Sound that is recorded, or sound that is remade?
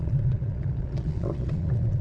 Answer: remade